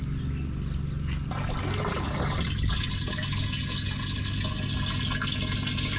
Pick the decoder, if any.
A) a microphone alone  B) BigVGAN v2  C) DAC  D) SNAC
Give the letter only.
A